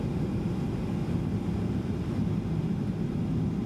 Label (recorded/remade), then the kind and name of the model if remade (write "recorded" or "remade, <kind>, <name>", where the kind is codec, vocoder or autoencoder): recorded